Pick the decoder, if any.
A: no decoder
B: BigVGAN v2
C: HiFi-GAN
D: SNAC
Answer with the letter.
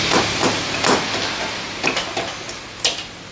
A